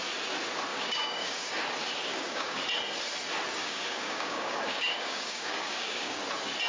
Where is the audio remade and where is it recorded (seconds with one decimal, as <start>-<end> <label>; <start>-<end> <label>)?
0.0-0.7 recorded; 0.7-1.5 remade; 1.5-2.1 recorded; 2.1-2.6 remade; 2.6-3.6 recorded; 3.6-6.2 remade; 6.2-6.7 recorded